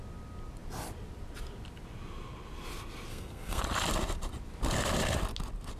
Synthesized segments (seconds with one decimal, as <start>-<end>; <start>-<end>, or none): 3.1-3.6